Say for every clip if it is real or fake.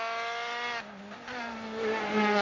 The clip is real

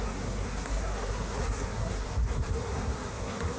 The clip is fake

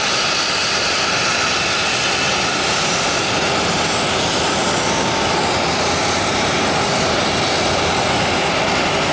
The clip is real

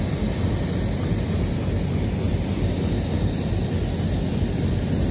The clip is real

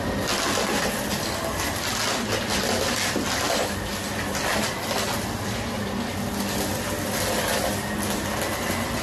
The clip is real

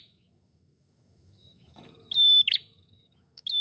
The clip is fake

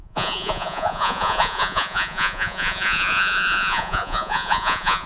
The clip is fake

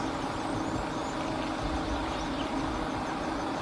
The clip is real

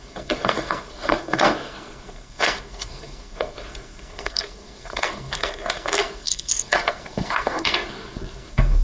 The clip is fake